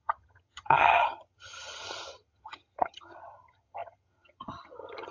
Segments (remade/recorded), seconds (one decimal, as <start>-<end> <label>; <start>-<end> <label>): 0.0-5.1 remade